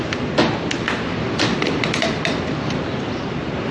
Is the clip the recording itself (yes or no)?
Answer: no